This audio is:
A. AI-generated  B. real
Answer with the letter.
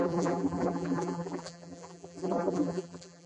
A